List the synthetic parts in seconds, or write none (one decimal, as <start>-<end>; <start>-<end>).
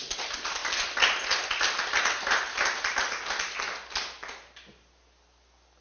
none